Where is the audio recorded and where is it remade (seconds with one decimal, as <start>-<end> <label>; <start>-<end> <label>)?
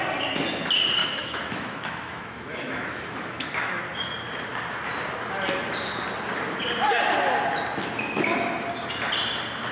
0.0-1.0 recorded; 1.0-3.8 remade; 3.8-9.7 recorded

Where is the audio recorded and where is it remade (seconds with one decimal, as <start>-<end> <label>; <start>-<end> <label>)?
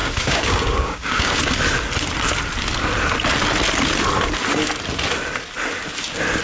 0.0-1.4 remade; 1.4-6.4 recorded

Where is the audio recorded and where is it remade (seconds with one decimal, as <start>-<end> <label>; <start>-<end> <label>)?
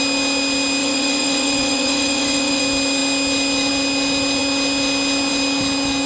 0.0-0.8 recorded; 0.8-2.6 remade; 2.6-6.1 recorded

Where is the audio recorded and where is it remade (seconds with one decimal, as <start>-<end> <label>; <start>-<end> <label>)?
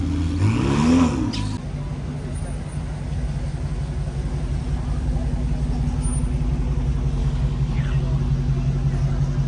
0.0-7.2 recorded; 7.2-7.8 remade; 7.8-9.5 recorded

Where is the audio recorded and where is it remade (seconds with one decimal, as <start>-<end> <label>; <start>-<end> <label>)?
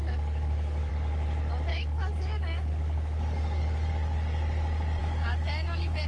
0.0-0.9 remade; 0.9-1.7 recorded; 1.7-3.9 remade; 3.9-5.0 recorded; 5.0-6.1 remade